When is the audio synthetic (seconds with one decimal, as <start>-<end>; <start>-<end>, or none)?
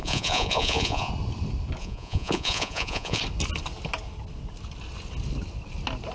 0.0-1.1; 1.8-3.2